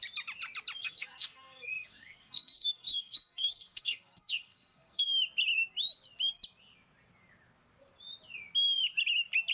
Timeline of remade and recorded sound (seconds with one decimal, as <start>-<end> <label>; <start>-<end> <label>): 0.0-0.8 recorded; 0.8-5.1 remade; 5.1-9.5 recorded